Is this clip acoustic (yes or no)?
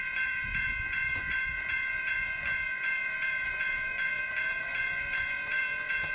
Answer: no